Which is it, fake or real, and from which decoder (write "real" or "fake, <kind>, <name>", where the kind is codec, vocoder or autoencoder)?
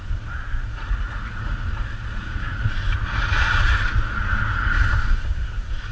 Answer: fake, vocoder, Vocos